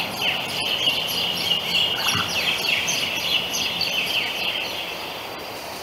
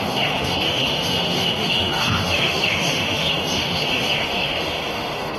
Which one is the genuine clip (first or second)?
first